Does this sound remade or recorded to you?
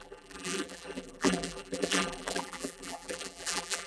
remade